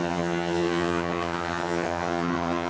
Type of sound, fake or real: fake